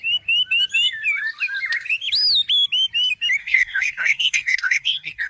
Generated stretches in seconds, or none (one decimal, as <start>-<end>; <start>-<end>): 3.4-5.3